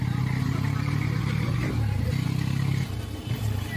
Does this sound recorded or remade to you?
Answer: recorded